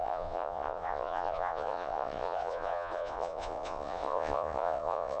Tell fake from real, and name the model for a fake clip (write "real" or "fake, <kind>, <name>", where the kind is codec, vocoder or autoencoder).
fake, vocoder, Vocos